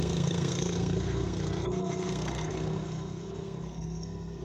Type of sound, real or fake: fake